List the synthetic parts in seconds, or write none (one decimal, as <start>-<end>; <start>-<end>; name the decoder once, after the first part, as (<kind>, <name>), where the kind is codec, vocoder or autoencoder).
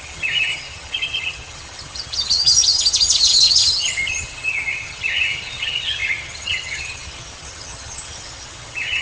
0.0-9.0 (vocoder, HiFi-GAN)